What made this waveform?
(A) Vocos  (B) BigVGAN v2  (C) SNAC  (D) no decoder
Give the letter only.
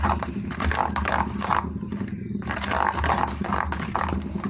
D